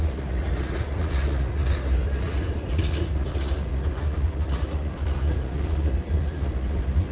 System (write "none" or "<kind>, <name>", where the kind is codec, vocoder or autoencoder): vocoder, Vocos